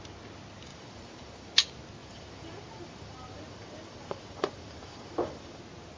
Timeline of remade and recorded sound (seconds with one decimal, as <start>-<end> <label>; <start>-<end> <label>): 0.0-0.7 recorded; 0.7-1.5 remade; 1.5-2.0 recorded; 2.0-5.6 remade; 5.6-6.0 recorded